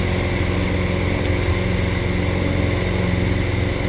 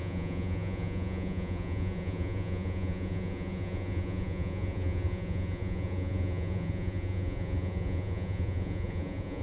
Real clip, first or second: first